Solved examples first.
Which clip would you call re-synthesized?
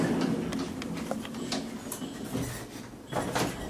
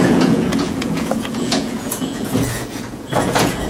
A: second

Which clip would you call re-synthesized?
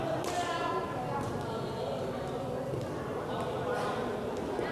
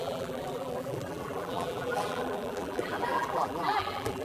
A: second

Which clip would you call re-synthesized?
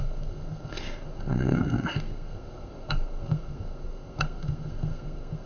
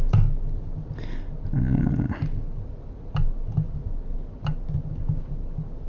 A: first